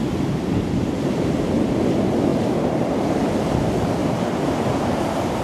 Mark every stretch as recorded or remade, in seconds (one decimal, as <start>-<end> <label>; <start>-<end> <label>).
0.0-5.4 recorded